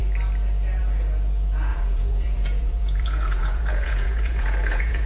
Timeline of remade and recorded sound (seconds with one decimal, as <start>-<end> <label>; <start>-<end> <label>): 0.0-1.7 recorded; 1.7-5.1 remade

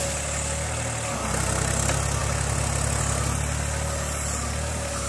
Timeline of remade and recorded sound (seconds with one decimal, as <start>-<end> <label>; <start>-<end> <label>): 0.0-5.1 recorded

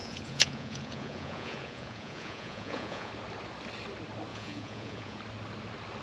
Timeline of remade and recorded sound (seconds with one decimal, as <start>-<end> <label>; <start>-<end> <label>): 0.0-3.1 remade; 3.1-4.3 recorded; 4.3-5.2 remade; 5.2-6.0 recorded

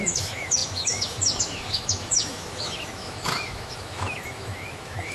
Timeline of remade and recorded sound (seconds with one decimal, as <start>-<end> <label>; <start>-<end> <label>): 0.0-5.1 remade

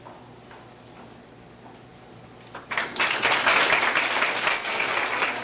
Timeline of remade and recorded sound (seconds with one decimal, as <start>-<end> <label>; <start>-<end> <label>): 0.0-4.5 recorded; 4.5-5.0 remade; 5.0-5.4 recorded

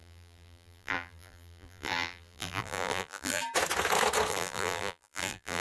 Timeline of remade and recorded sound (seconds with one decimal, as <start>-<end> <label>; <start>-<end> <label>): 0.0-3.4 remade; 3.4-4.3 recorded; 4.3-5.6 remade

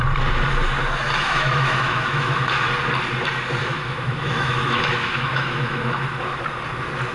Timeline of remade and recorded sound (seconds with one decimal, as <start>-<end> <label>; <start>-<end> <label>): 0.0-1.1 recorded; 1.1-2.7 remade; 2.7-3.6 recorded; 3.6-6.4 remade; 6.4-7.1 recorded

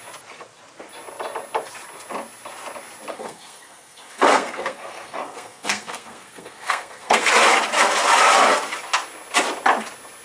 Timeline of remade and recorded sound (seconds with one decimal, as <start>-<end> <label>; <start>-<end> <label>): 0.0-3.1 recorded; 3.1-7.3 remade; 7.3-10.2 recorded